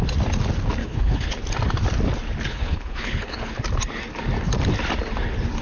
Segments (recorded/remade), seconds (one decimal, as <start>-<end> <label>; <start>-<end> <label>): 0.0-0.8 recorded; 0.8-1.3 remade; 1.3-2.5 recorded; 2.5-3.5 remade; 3.5-5.6 recorded